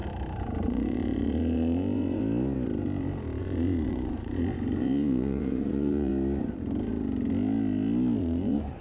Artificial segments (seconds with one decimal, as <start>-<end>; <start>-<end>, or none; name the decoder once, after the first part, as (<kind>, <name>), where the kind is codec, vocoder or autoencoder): 0.6-2.2 (vocoder, Vocos); 3.4-6.1; 8.2-8.8